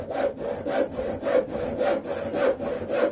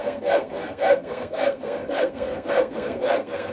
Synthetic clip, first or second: second